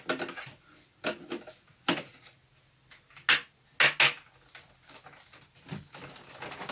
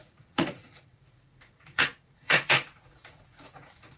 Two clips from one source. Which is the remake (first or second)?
second